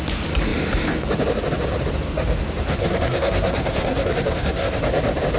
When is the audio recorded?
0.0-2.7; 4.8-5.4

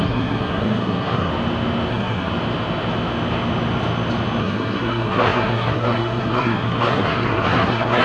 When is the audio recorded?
1.3-1.9; 2.3-4.4

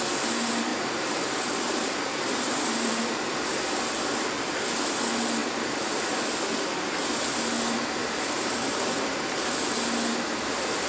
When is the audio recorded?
0.0-0.7; 3.8-5.4; 5.9-8.0; 8.7-10.9

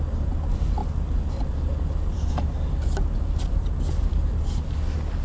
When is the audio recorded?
0.0-5.2

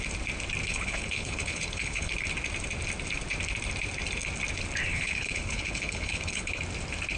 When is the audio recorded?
0.0-0.7; 2.1-4.9; 6.6-7.2

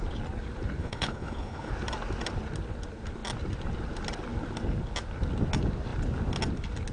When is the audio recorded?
0.0-0.8; 1.7-6.9